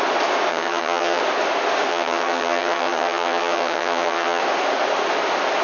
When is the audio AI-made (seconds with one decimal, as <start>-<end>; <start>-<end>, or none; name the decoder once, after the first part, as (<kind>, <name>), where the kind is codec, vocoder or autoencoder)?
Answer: 0.5-1.2 (vocoder, HiFi-GAN); 1.9-4.4